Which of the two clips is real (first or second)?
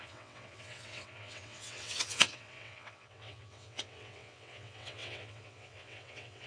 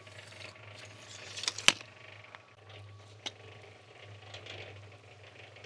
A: second